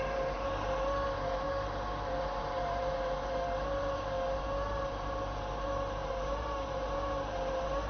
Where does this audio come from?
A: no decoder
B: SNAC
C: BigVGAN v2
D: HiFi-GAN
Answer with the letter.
C